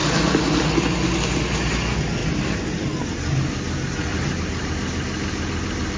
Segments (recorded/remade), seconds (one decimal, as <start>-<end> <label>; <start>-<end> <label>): 0.0-2.2 recorded; 2.2-3.0 remade; 3.0-4.1 recorded; 4.1-4.7 remade; 4.7-6.0 recorded